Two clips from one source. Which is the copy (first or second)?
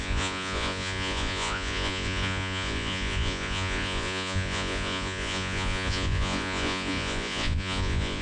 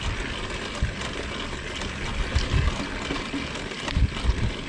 first